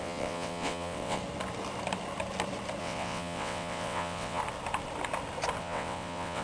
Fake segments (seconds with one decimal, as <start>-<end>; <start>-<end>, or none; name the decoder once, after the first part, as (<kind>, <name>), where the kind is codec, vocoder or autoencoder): 0.0-1.2 (vocoder, WaveNeXt); 2.8-4.4; 5.6-6.4